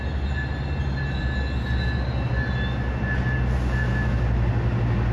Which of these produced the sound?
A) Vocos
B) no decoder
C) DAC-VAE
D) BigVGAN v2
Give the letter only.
B